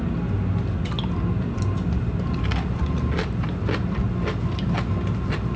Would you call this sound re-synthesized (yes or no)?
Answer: no